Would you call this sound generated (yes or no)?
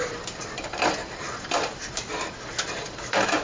yes